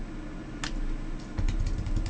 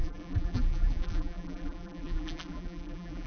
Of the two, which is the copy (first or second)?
second